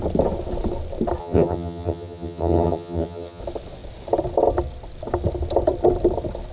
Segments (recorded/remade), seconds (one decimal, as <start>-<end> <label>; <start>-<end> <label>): 0.0-1.2 recorded; 1.2-3.4 remade; 3.4-6.5 recorded